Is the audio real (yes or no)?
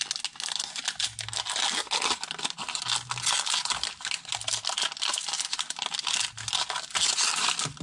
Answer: yes